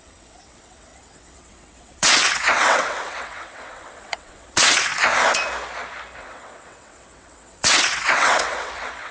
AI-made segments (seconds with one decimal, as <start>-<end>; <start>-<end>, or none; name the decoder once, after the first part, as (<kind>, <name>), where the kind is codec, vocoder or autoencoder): 0.0-4.9 (vocoder, WaveNeXt); 6.2-9.1